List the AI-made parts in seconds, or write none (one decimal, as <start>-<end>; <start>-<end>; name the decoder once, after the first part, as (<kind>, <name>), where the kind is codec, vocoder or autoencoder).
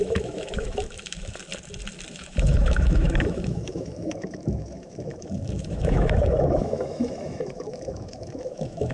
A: 0.0-1.4 (autoencoder, DAC-VAE); 2.1-8.9